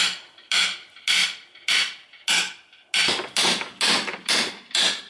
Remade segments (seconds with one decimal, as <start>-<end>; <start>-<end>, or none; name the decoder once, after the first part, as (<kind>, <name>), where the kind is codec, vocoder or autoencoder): none